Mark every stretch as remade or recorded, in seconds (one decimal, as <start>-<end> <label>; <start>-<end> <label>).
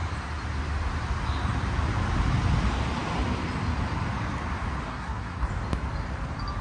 0.0-4.9 recorded; 4.9-5.5 remade; 5.5-6.6 recorded